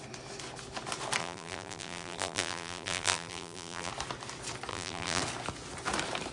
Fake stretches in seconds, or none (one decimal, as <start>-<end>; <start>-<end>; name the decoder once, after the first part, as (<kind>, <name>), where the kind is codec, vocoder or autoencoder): 1.2-3.9 (vocoder, BigVGAN v2); 4.7-5.2